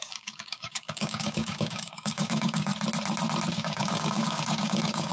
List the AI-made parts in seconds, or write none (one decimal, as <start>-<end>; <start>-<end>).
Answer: 0.0-2.7; 3.5-5.1